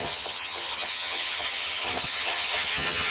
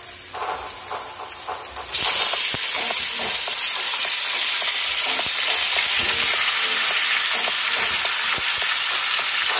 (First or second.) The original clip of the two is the second